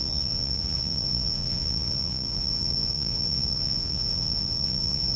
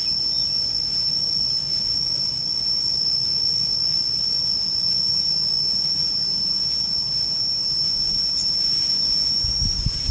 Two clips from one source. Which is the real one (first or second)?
second